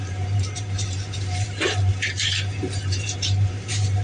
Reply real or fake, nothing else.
fake